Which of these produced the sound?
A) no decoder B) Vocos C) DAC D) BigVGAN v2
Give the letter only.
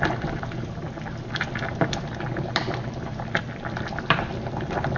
D